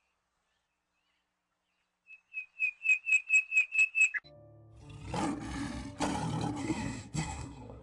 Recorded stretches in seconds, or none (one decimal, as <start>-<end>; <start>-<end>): 0.0-6.6